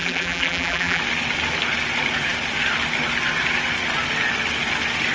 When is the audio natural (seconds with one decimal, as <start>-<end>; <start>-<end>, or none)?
1.0-5.1